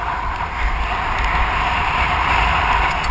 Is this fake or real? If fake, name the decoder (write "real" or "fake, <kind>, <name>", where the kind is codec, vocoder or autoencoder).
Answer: real